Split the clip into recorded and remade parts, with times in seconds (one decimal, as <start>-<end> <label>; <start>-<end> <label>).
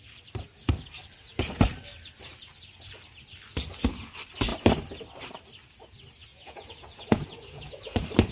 0.0-6.3 recorded; 6.3-7.8 remade; 7.8-8.3 recorded